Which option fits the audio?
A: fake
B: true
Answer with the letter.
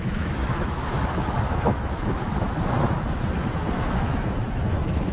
A